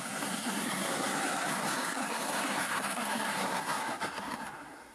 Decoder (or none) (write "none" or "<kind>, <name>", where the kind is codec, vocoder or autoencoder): codec, SNAC